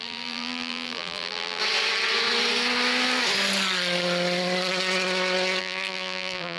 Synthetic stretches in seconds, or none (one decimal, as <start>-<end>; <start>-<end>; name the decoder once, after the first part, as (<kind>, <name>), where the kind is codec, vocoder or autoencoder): 0.0-1.6 (vocoder, BigVGAN v2); 5.6-6.6